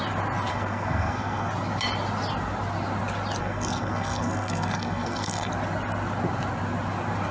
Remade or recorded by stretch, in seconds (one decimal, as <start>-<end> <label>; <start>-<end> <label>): 0.0-0.5 recorded; 0.5-1.5 remade; 1.5-3.4 recorded; 3.4-5.5 remade; 5.5-7.3 recorded